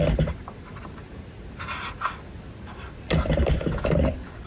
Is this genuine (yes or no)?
yes